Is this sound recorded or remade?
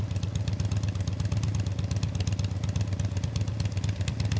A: recorded